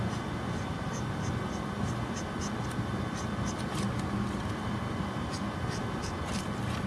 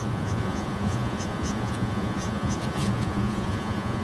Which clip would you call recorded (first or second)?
first